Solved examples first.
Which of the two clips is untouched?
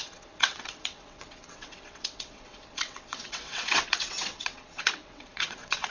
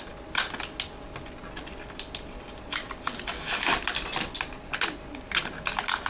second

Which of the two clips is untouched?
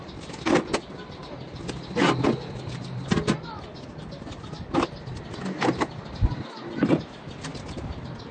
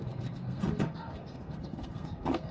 first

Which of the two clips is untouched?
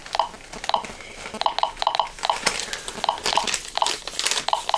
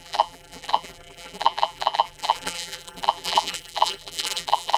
first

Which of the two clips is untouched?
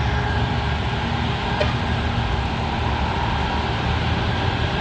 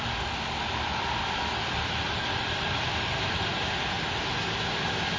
first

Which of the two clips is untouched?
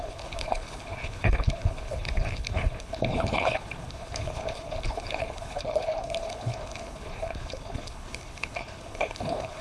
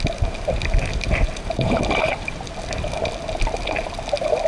second